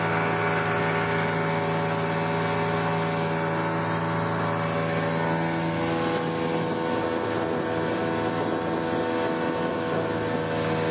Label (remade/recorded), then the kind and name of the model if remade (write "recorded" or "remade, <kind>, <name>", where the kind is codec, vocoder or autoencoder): recorded